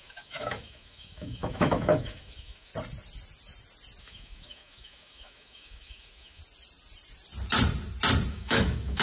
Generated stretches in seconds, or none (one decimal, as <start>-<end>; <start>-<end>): 0.0-2.7; 4.0-6.4; 8.3-9.0